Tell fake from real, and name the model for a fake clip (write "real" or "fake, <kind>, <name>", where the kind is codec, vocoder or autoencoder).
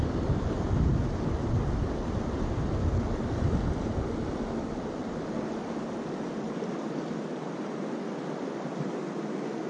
real